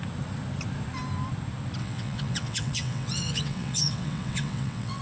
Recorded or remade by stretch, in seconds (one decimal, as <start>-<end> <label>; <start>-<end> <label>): 0.0-1.8 recorded; 1.8-5.0 remade